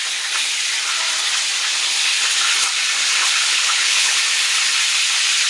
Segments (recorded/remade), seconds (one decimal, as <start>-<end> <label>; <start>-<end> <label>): 0.0-3.2 recorded; 3.2-4.2 remade; 4.2-5.5 recorded